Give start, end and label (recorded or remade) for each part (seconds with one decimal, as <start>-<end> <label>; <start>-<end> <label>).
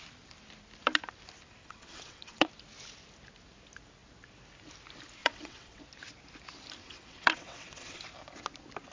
0.0-1.6 recorded; 1.6-2.5 remade; 2.5-5.2 recorded; 5.2-5.8 remade; 5.8-6.8 recorded; 6.8-8.0 remade; 8.0-8.9 recorded